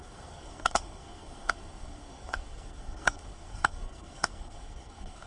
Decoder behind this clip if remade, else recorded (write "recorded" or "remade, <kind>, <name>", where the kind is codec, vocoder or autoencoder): remade, codec, SNAC